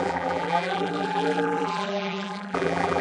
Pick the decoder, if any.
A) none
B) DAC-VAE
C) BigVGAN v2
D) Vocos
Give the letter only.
C